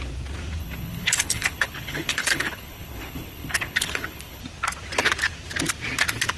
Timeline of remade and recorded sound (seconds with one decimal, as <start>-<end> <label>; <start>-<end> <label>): 0.0-0.6 recorded; 0.6-4.4 remade; 4.4-6.4 recorded